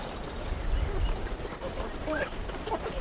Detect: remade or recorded remade